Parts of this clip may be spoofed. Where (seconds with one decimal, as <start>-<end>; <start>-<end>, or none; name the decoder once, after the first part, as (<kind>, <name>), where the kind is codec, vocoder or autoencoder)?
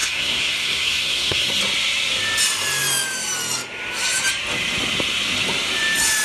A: 0.0-1.6 (codec, SNAC)